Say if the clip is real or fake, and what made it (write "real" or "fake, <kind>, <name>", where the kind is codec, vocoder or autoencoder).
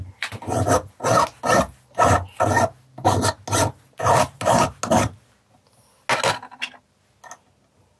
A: real